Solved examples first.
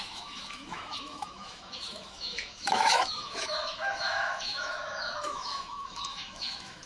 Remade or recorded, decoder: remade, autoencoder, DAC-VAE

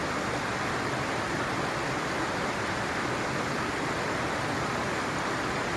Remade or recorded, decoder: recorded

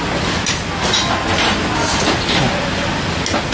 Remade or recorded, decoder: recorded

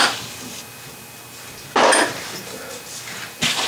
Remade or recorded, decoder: recorded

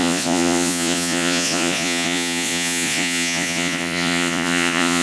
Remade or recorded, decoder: remade, vocoder, Vocos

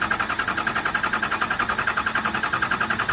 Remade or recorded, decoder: recorded